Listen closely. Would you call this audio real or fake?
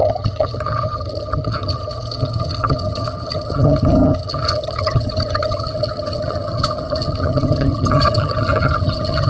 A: fake